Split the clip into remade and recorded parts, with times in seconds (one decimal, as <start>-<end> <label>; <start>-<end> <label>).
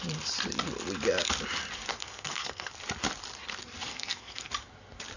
0.0-1.9 recorded; 1.9-2.7 remade; 2.7-3.9 recorded; 3.9-4.5 remade; 4.5-5.2 recorded